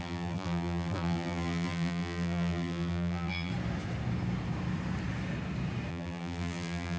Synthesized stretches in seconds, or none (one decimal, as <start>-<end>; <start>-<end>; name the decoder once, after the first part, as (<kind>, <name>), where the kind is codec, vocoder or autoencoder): 0.0-3.5 (vocoder, BigVGAN v2); 5.9-7.0